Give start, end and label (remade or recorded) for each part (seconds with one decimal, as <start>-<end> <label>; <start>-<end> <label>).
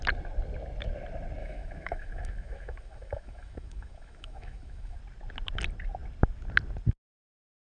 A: 0.0-1.4 recorded; 1.4-5.0 remade; 5.0-7.7 recorded